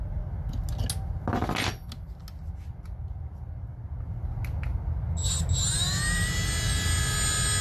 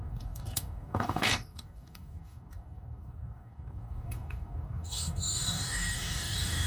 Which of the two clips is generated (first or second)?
second